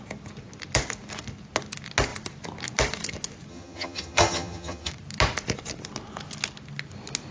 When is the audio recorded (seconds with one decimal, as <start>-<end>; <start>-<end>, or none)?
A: 0.0-3.5; 4.9-7.3